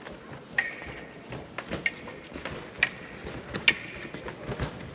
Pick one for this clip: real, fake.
real